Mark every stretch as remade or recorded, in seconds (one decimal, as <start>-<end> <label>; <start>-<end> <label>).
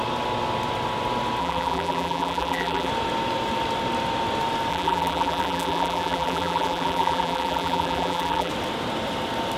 0.0-1.4 recorded; 1.4-2.9 remade; 2.9-4.7 recorded; 4.7-8.5 remade; 8.5-9.6 recorded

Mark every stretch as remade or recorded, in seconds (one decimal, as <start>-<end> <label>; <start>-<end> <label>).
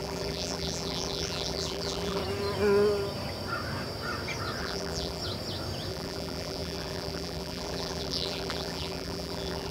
0.0-2.2 remade; 2.2-4.6 recorded; 4.6-5.2 remade; 5.2-5.9 recorded; 5.9-9.7 remade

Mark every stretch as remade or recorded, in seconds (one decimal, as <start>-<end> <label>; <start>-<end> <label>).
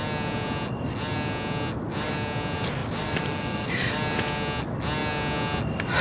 0.0-2.8 recorded; 2.8-3.9 remade; 3.9-6.0 recorded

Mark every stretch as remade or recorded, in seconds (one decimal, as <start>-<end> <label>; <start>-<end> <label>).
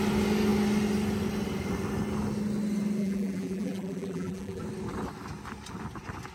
0.0-3.0 recorded; 3.0-4.6 remade; 4.6-6.3 recorded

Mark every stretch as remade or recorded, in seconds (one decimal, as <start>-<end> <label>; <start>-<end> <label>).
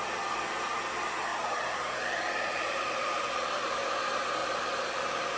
0.0-1.3 recorded; 1.3-3.8 remade; 3.8-4.4 recorded; 4.4-5.4 remade